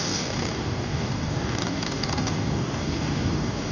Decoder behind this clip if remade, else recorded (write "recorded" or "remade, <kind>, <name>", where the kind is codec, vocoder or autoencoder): remade, codec, DAC